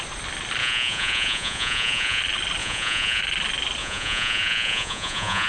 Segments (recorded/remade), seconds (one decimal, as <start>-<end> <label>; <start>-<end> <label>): 0.0-0.6 recorded; 0.6-2.2 remade; 2.2-2.6 recorded; 2.6-3.2 remade; 3.2-3.8 recorded; 3.8-5.5 remade